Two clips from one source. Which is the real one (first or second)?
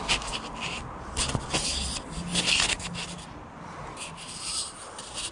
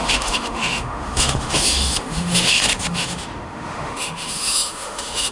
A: first